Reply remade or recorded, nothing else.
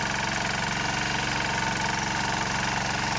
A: recorded